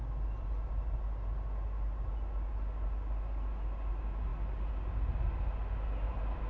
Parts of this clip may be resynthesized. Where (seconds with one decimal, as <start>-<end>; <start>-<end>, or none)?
none